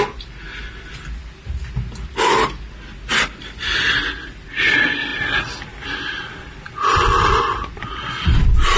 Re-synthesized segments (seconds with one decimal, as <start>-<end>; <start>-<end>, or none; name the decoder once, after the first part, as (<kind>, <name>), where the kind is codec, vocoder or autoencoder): none